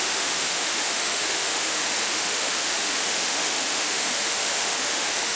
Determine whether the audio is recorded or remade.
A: remade